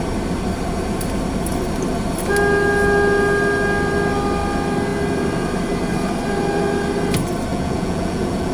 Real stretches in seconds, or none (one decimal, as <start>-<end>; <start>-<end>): 0.0-7.5